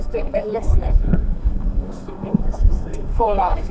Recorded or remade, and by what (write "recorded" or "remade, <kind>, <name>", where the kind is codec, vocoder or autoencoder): remade, codec, SNAC